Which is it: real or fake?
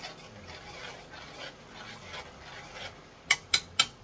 real